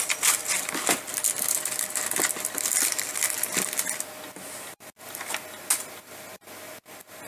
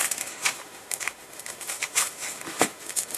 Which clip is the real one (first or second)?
first